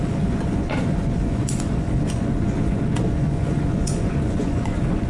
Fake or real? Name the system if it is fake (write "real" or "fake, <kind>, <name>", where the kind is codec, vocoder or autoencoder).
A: fake, vocoder, Vocos